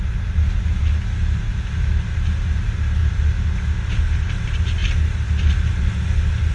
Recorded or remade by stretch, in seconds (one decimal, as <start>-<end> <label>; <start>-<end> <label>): 0.0-6.5 recorded